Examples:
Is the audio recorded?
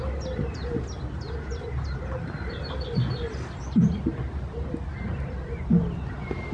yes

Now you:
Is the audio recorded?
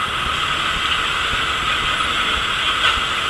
yes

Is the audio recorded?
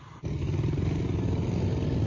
yes